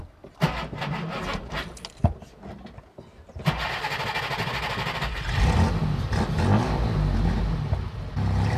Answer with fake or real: real